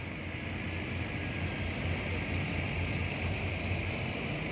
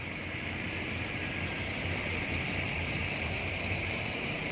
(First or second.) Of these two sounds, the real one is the first